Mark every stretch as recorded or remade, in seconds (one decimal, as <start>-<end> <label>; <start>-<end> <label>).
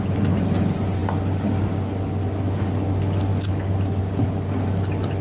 0.0-5.2 recorded